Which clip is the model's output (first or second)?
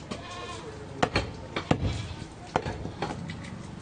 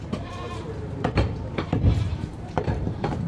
second